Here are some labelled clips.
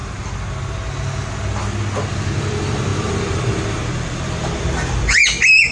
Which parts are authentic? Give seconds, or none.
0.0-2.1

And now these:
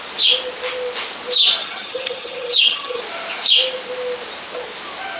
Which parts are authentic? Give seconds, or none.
0.0-1.6; 3.0-5.2